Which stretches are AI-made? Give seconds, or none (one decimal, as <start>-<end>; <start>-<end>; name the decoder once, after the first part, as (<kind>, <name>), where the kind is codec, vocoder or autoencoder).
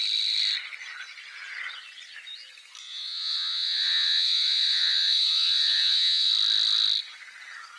2.8-6.3 (vocoder, Vocos)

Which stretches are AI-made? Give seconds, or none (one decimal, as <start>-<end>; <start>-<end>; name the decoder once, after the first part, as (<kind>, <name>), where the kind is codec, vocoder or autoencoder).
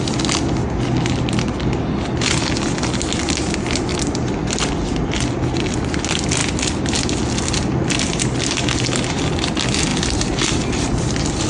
none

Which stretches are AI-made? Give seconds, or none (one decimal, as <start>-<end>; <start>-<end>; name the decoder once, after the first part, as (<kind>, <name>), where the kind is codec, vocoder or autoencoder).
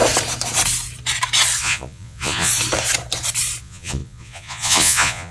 1.6-2.5 (vocoder, Vocos); 3.6-5.3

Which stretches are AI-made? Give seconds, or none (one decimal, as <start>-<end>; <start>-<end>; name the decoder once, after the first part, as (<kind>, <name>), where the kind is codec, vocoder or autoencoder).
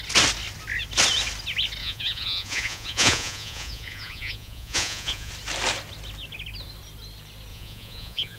1.8-5.3 (vocoder, Vocos); 7.5-8.4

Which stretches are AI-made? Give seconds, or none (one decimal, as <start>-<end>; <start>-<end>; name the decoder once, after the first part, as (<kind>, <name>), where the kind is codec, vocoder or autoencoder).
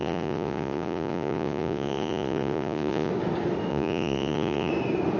0.0-3.1 (vocoder, Vocos); 3.7-4.7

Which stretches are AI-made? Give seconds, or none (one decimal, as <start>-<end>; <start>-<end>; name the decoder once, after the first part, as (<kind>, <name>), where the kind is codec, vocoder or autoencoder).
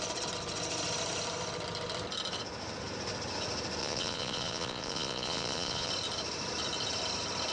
3.8-5.9 (vocoder, Vocos)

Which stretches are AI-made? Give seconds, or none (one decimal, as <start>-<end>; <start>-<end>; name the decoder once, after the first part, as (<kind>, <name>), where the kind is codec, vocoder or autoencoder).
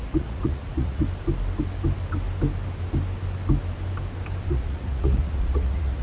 0.0-1.0 (vocoder, Vocos); 4.5-6.0